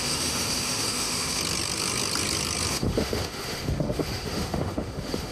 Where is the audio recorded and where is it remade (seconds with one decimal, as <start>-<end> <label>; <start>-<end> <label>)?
0.0-1.4 remade; 1.4-2.7 recorded; 2.7-5.3 remade

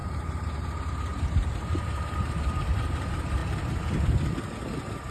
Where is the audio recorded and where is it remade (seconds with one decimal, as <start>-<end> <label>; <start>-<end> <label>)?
0.0-0.6 remade; 0.6-1.1 recorded; 1.1-2.9 remade; 2.9-5.1 recorded

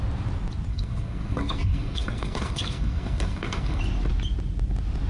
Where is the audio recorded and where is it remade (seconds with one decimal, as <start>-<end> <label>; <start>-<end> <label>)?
0.0-0.7 recorded; 0.7-3.8 remade; 3.8-5.1 recorded

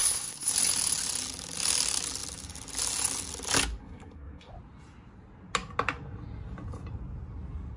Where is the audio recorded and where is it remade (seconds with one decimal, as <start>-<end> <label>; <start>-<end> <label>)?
0.0-0.5 remade; 0.5-3.8 recorded; 3.8-4.5 remade; 4.5-7.8 recorded

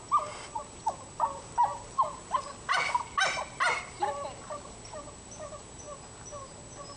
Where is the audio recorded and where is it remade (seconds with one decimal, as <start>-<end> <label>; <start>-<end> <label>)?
0.0-1.6 recorded; 1.6-5.8 remade; 5.8-7.0 recorded

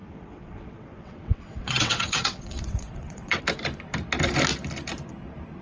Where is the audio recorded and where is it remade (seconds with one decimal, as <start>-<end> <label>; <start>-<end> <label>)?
0.0-3.4 remade; 3.4-5.6 recorded

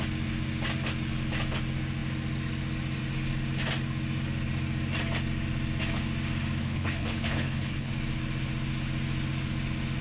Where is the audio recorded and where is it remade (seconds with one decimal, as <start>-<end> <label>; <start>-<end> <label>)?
0.0-6.6 recorded; 6.6-7.9 remade; 7.9-10.0 recorded